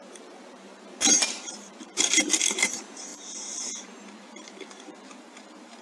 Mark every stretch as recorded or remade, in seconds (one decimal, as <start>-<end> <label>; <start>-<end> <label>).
0.0-5.8 remade